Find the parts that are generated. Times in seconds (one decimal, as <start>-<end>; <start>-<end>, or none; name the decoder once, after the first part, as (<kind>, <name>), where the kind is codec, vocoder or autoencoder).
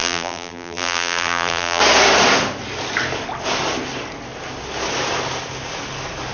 0.0-1.8 (vocoder, BigVGAN v2)